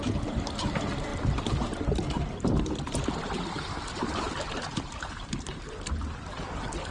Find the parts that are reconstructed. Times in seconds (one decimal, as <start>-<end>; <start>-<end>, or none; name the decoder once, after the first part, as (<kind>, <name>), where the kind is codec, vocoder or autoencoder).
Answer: none